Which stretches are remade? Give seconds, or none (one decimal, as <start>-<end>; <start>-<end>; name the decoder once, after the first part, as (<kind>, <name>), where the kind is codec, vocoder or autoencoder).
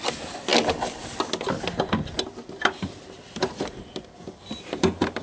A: 0.0-0.5 (vocoder, BigVGAN v2); 3.6-5.2